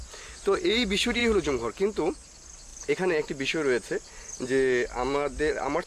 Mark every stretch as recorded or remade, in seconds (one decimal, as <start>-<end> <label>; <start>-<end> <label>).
0.0-5.9 recorded